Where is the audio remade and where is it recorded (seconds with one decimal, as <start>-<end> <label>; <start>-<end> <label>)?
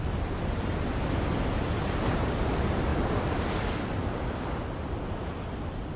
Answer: 0.0-6.0 recorded